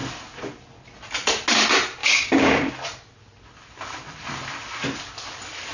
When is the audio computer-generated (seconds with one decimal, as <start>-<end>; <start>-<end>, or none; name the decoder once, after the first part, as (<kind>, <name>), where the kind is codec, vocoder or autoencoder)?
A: 2.0-2.7 (codec, DAC)